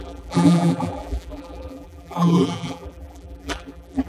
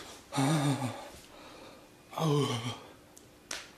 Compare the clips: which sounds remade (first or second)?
first